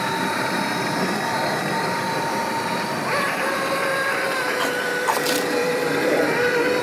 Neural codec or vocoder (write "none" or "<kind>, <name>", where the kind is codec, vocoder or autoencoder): vocoder, BigVGAN v2